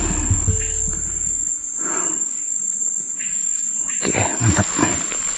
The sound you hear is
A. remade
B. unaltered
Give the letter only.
B